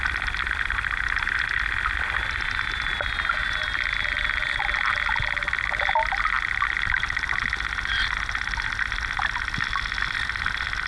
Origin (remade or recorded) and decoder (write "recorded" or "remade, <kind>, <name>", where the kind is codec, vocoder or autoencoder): recorded